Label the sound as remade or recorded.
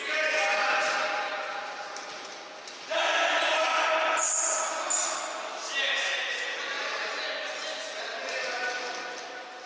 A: recorded